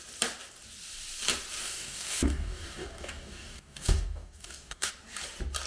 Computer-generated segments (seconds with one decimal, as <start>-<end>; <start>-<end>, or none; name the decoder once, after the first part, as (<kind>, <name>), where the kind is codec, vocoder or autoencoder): 1.6-4.9 (codec, DAC)